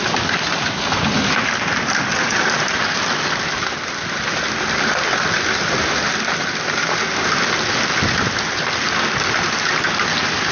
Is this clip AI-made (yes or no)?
no